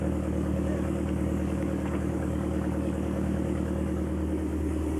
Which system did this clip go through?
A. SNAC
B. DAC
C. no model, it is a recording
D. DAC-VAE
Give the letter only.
B